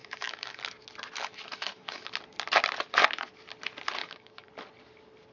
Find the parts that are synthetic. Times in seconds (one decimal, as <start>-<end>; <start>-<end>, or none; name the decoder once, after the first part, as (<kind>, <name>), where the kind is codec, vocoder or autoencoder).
0.0-0.6 (autoencoder, DAC-VAE); 1.2-2.1; 4.0-4.5